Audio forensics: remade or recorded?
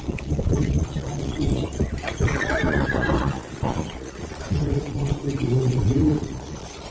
remade